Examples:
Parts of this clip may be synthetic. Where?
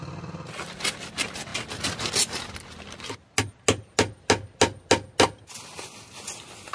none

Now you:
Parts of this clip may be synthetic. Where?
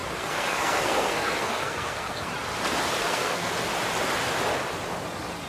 0.0-2.3 (codec, SNAC); 3.0-3.5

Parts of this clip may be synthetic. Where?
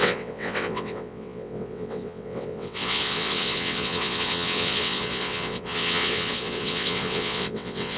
0.0-8.0 (vocoder, WaveNeXt)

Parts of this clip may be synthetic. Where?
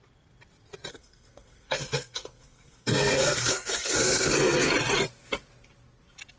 0.9-4.7 (codec, SNAC)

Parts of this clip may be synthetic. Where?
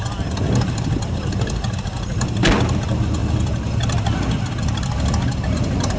none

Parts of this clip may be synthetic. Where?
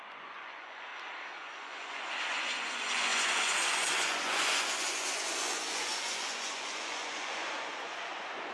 0.0-0.9 (vocoder, Vocos); 1.4-8.5